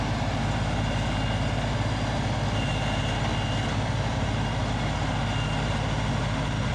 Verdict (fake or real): real